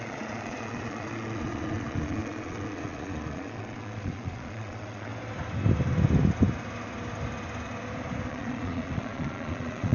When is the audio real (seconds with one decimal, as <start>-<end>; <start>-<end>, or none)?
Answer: 5.1-8.3